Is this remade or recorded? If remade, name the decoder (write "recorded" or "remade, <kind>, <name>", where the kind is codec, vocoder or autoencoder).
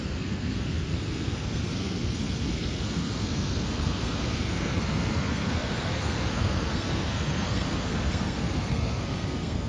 remade, codec, SNAC